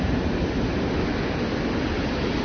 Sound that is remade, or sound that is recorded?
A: recorded